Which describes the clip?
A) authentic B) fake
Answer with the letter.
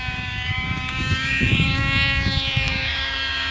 B